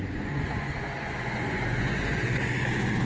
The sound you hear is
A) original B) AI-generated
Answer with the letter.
B